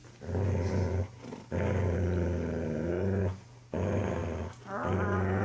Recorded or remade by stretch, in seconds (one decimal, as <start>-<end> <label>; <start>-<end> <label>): 0.0-5.4 recorded